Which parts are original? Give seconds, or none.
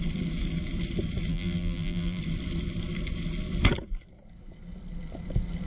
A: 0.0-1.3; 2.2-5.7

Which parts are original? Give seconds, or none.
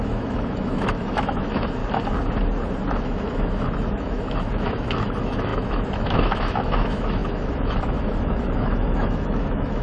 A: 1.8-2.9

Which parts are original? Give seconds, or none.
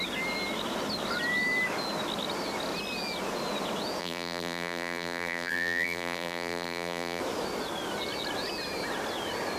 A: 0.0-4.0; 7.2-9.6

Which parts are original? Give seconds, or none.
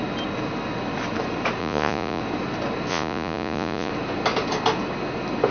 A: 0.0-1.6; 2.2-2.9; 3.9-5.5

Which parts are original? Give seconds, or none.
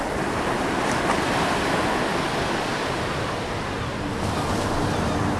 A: 0.0-5.4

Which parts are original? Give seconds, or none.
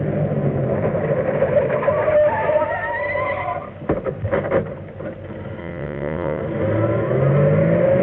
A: 0.0-5.6; 6.4-8.0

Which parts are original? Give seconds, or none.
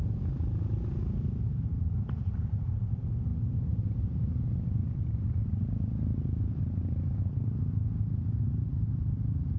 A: 0.0-1.5; 2.8-3.3; 4.2-4.8; 7.3-9.6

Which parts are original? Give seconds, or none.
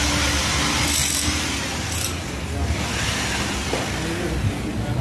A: 0.0-5.0